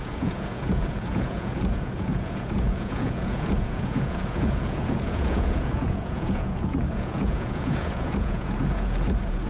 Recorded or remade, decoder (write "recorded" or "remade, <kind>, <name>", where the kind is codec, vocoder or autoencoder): remade, vocoder, Vocos